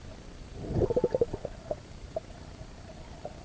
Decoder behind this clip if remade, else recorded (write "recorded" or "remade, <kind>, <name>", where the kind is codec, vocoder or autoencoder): recorded